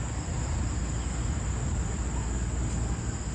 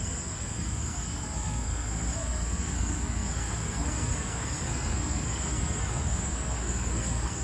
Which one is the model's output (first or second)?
second